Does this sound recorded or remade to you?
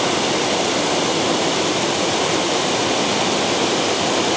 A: recorded